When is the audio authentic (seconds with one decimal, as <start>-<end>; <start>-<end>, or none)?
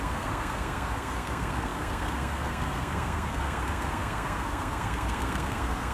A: none